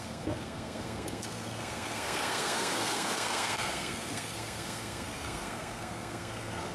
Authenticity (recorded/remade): remade